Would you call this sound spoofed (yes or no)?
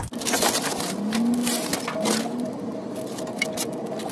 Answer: no